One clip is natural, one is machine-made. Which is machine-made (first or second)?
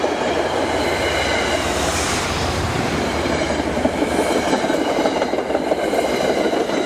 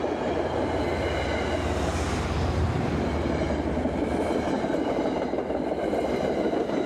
first